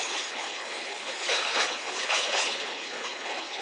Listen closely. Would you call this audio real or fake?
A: fake